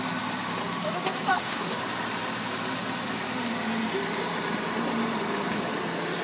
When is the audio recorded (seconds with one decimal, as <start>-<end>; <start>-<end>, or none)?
0.0-1.3; 1.8-6.2